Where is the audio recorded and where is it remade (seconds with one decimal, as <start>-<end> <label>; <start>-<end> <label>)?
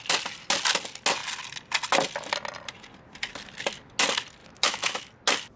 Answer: 0.0-4.4 recorded; 4.4-4.9 remade; 4.9-5.6 recorded